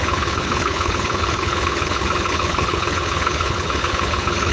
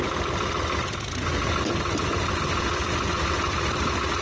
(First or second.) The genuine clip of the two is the second